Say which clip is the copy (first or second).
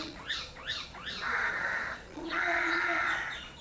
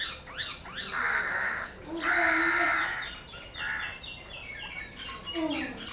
first